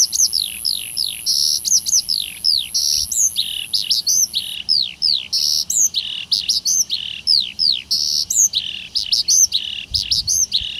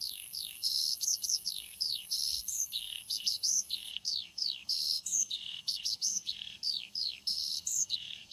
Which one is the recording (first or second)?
first